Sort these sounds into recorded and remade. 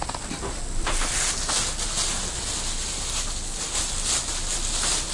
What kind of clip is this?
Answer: recorded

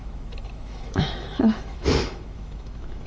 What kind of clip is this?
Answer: remade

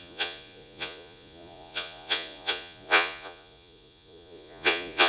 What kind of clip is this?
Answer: remade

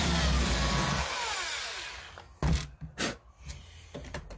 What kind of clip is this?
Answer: recorded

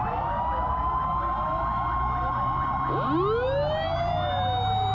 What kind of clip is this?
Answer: recorded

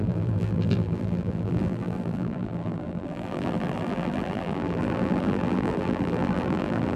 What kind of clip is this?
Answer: remade